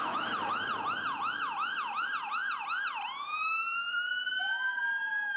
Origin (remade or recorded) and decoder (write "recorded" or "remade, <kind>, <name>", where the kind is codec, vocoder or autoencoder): recorded